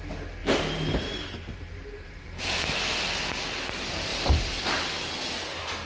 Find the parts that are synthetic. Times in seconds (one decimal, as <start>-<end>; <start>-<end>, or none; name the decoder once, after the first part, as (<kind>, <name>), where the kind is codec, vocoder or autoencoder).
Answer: 0.4-3.2 (vocoder, BigVGAN v2); 4.1-4.6